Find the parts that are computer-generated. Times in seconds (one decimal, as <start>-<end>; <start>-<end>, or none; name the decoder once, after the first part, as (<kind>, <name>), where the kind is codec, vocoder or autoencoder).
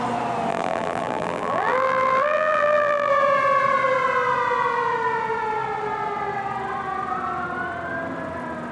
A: 0.5-3.1 (vocoder, BigVGAN v2)